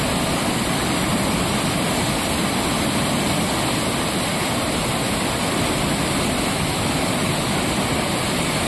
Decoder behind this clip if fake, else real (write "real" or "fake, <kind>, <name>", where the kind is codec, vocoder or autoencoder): fake, vocoder, BigVGAN v2